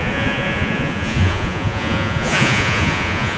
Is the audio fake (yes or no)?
yes